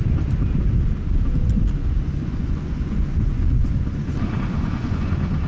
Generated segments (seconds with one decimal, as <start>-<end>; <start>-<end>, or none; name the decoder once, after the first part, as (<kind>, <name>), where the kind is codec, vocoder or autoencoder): 1.8-5.1 (vocoder, Vocos)